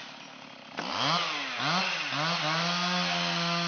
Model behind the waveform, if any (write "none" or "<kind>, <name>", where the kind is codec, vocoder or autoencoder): none